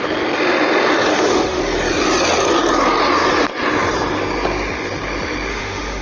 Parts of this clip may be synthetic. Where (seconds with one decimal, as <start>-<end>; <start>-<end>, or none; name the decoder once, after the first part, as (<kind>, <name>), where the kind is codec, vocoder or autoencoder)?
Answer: 1.1-1.6 (autoencoder, DAC-VAE); 5.5-6.0